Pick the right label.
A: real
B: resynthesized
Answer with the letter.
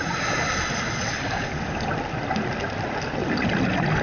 A